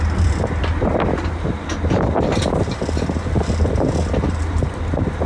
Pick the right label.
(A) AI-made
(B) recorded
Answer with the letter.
B